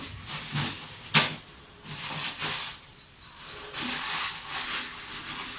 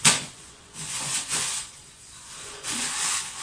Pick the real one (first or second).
first